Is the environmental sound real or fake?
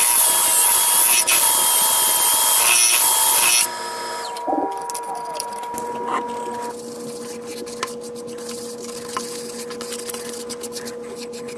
real